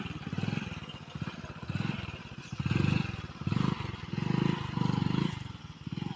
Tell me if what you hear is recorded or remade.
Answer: recorded